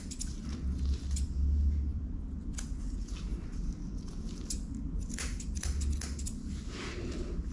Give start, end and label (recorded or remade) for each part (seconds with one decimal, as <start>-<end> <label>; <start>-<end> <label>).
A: 0.0-1.9 recorded; 1.9-2.5 remade; 2.5-3.3 recorded; 3.3-5.9 remade; 5.9-7.5 recorded